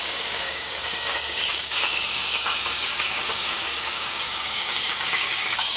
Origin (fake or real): fake